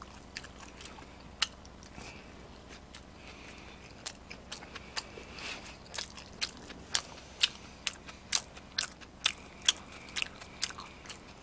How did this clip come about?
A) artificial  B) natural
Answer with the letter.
B